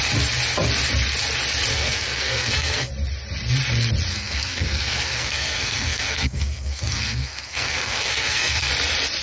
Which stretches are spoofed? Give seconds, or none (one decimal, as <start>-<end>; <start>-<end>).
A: 1.7-2.9; 4.1-8.7